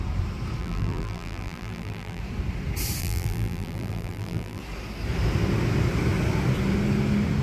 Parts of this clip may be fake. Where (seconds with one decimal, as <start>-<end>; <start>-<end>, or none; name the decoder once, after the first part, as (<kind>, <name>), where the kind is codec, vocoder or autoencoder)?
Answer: 0.6-2.2 (vocoder, BigVGAN v2); 3.0-4.6